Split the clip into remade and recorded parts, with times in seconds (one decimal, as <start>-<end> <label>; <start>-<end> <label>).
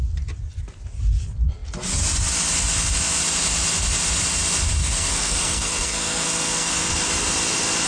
0.0-4.8 recorded; 4.8-6.9 remade; 6.9-7.9 recorded